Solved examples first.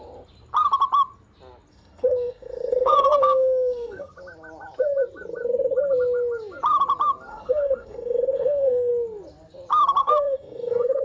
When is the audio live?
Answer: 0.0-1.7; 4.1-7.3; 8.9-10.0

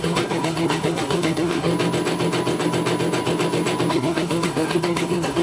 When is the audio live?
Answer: 1.7-3.9

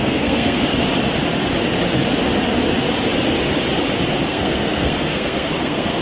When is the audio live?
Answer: 0.7-4.3

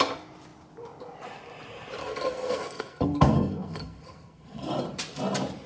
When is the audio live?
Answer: 0.0-2.0; 4.7-5.7

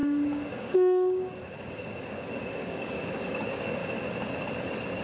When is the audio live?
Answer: 3.8-5.0